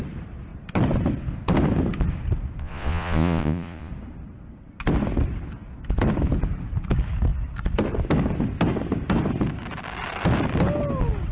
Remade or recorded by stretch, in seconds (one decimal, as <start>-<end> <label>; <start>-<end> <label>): 0.0-2.6 recorded; 2.6-3.9 remade; 3.9-11.3 recorded